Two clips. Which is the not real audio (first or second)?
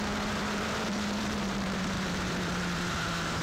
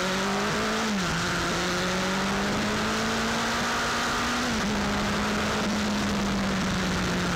first